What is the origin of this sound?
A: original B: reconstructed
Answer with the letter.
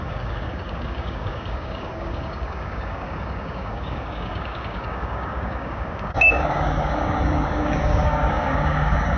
B